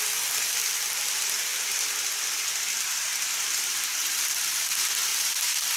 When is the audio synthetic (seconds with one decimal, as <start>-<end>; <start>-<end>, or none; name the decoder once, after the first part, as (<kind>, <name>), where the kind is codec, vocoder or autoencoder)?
0.6-1.1 (vocoder, BigVGAN v2); 1.5-4.6; 5.1-5.8